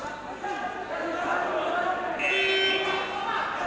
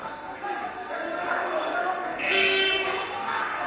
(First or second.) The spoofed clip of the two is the second